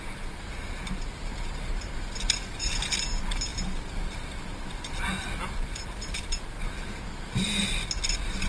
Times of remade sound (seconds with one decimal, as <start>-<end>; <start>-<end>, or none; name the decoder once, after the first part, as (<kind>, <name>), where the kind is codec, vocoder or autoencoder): none